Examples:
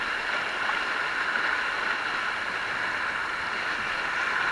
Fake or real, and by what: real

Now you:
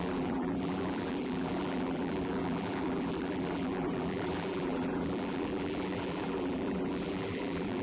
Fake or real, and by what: fake, vocoder, BigVGAN v2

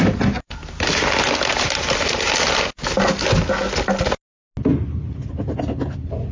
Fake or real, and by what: real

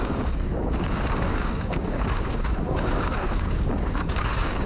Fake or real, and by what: fake, codec, DAC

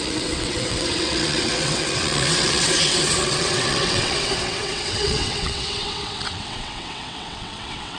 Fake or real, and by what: fake, vocoder, WaveNeXt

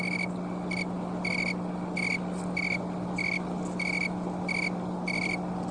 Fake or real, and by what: real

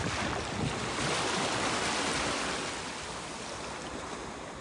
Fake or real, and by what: real